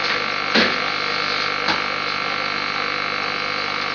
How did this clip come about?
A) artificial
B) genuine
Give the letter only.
B